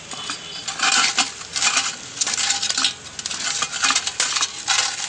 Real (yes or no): yes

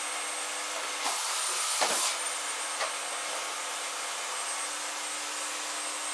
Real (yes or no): yes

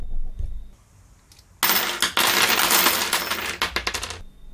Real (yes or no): yes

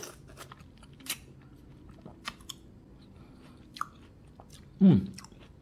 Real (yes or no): yes